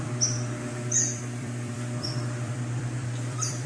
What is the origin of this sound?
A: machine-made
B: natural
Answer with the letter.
A